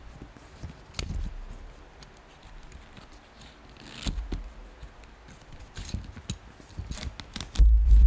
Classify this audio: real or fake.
real